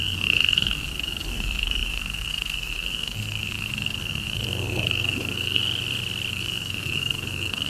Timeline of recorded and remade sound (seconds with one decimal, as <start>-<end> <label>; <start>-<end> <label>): 0.0-5.6 remade; 5.6-6.3 recorded; 6.3-7.7 remade